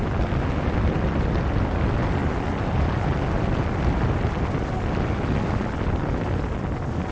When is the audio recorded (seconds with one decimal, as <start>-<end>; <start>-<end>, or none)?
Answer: 0.0-7.1

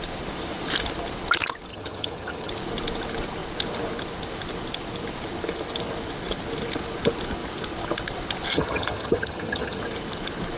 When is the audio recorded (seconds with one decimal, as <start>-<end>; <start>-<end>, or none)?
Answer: 0.0-1.7; 2.5-8.5; 9.8-10.6

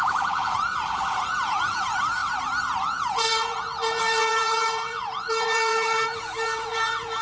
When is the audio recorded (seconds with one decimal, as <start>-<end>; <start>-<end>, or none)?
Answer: 2.2-2.8

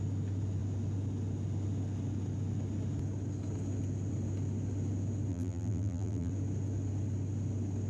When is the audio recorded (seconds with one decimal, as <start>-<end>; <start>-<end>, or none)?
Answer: 0.0-5.3; 6.3-7.9

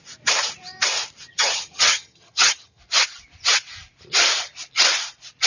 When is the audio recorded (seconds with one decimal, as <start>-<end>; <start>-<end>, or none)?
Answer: 0.0-1.3; 2.8-5.5

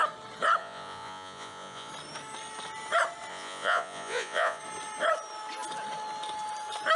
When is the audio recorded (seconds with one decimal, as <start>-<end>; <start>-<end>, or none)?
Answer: 0.0-0.6; 1.9-3.3; 4.6-7.0

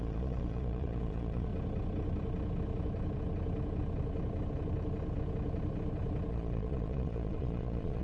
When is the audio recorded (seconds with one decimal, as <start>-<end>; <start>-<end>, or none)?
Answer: 1.5-6.3

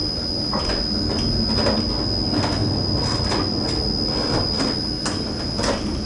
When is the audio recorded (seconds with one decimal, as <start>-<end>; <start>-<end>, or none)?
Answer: 0.0-6.1